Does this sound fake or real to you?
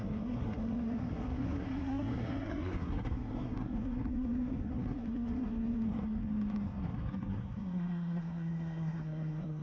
fake